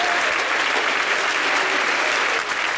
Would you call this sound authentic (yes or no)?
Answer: yes